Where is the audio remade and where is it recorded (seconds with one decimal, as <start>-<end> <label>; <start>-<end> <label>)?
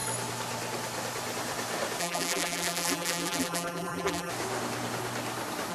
0.0-2.0 recorded; 2.0-4.3 remade; 4.3-5.7 recorded